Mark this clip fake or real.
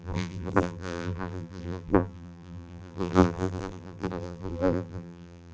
fake